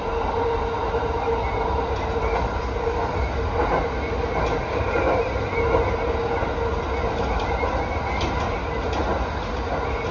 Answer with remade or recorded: recorded